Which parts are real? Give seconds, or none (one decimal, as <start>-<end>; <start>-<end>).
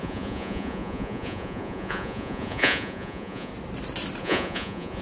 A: 3.5-4.2